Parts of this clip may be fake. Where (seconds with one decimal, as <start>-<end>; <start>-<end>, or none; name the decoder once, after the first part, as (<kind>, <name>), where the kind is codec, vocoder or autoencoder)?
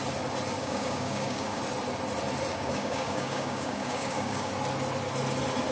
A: 0.6-1.6 (codec, DAC); 2.5-4.5